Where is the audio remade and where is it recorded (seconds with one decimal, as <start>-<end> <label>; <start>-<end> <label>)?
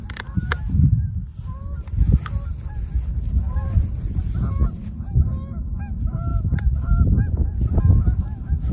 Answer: 0.0-6.3 recorded; 6.3-7.8 remade; 7.8-8.7 recorded